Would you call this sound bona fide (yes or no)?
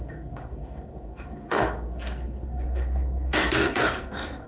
no